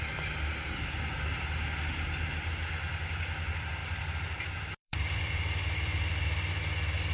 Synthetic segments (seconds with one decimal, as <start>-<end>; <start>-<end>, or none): 3.8-6.5